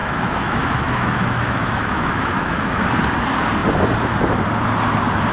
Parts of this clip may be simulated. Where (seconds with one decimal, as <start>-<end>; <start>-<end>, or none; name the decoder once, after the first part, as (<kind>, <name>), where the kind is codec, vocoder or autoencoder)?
0.0-2.8 (autoencoder, DAC-VAE)